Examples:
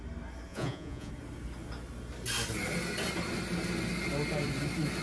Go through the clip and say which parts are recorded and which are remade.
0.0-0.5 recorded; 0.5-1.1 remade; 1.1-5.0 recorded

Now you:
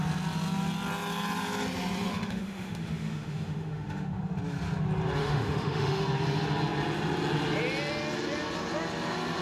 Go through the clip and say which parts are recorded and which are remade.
0.0-2.1 recorded; 2.1-4.2 remade; 4.2-5.2 recorded; 5.2-6.0 remade; 6.0-9.4 recorded

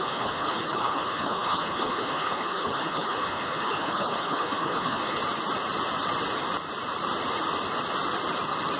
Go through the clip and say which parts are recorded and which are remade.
0.0-5.2 remade; 5.2-8.8 recorded

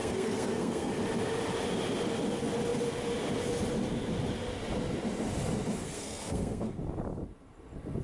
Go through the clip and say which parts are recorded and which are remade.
0.0-0.9 remade; 0.9-5.8 recorded; 5.8-6.8 remade; 6.8-8.0 recorded

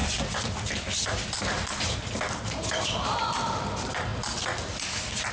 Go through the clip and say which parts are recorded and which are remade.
0.0-3.2 remade; 3.2-4.1 recorded; 4.1-5.3 remade